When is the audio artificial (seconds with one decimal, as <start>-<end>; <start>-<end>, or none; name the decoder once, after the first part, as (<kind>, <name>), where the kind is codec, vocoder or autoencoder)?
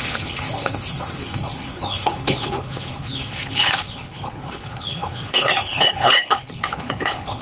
0.0-7.4 (codec, HILCodec)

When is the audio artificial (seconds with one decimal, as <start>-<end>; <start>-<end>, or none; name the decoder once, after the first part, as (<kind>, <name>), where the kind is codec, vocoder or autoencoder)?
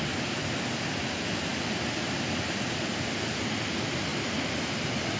1.5-2.9 (vocoder, BigVGAN v2); 4.1-4.8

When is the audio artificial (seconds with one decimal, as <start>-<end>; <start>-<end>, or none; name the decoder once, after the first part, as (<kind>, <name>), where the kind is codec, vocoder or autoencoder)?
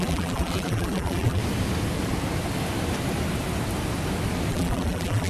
0.0-1.4 (vocoder, BigVGAN v2); 4.5-5.3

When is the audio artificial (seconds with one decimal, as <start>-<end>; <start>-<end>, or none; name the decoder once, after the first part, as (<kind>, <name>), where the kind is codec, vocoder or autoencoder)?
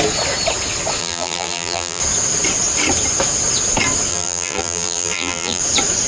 1.0-2.0 (vocoder, BigVGAN v2); 4.1-5.6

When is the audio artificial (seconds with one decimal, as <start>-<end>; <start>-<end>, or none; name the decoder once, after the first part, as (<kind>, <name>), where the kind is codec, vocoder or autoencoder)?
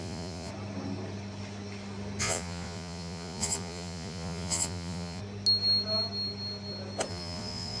0.0-0.5 (vocoder, Vocos); 2.2-5.2; 7.1-7.8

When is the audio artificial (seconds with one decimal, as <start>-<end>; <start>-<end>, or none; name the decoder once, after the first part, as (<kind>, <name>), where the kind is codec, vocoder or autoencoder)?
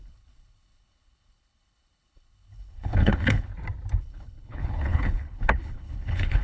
0.0-3.5 (codec, HILCodec); 4.0-6.4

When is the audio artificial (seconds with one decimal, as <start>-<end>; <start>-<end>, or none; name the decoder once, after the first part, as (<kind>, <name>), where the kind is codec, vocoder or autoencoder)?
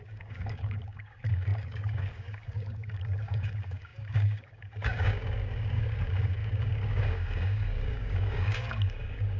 0.0-9.4 (codec, DAC)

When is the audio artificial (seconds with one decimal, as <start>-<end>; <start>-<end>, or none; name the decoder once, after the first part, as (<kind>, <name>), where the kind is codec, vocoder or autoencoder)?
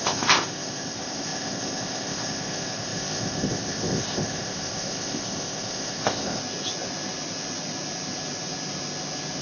0.0-6.4 (codec, ZipCodec)